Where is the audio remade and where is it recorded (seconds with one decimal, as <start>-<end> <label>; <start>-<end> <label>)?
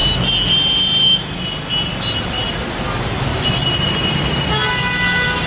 0.0-3.3 recorded; 3.3-4.5 remade; 4.5-5.5 recorded